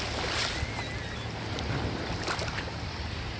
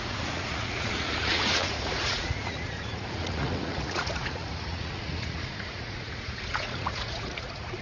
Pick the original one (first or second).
first